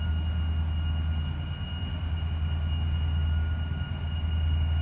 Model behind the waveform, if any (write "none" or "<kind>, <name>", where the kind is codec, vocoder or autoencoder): none